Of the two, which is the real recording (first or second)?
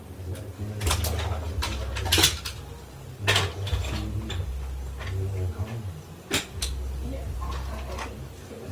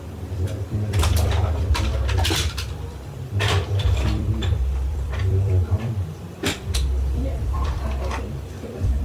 first